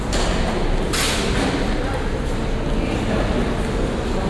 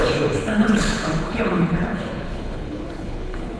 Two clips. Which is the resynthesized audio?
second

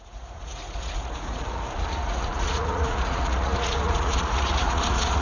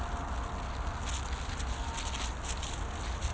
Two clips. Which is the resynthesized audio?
first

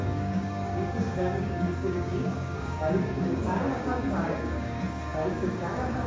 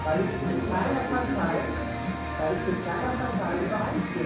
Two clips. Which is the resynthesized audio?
first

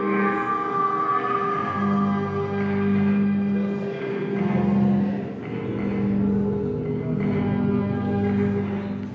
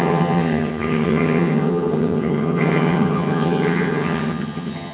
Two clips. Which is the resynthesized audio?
second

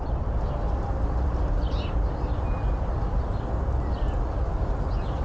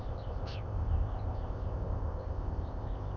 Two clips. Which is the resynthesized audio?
second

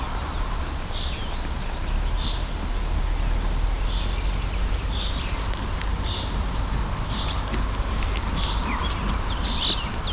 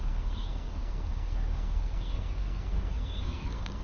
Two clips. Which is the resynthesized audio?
second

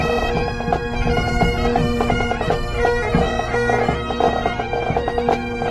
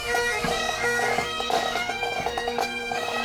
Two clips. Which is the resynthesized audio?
second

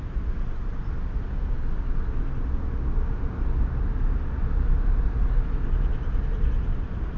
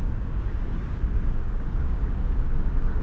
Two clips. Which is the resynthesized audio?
second